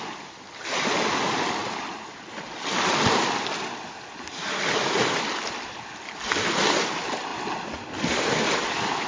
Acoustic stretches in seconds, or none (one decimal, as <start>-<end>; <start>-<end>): 0.0-9.1